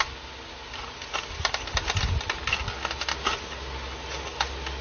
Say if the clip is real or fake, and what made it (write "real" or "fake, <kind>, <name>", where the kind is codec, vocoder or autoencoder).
real